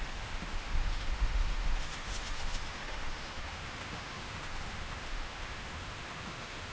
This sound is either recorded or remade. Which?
remade